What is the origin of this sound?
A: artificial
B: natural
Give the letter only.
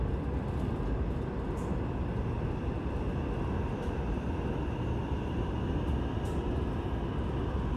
B